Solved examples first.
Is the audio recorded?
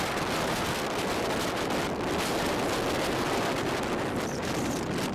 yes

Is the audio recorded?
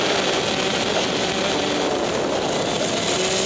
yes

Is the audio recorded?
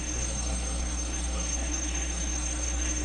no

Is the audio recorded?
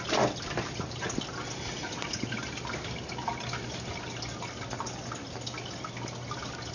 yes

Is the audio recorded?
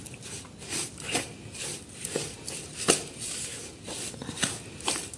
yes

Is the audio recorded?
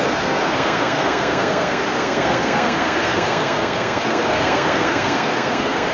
no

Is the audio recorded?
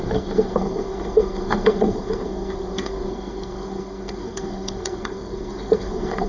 no